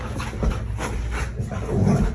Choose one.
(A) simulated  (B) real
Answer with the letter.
B